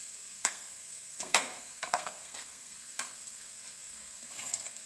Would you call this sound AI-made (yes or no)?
yes